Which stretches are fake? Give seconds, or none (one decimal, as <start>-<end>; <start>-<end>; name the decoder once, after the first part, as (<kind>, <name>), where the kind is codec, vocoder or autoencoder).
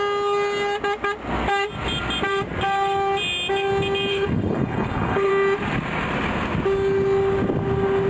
4.1-5.3 (codec, HILCodec)